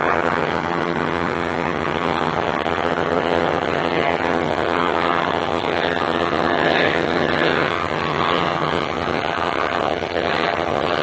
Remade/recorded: remade